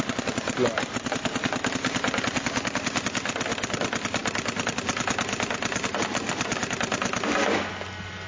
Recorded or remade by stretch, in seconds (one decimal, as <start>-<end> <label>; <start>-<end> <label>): 0.0-8.3 recorded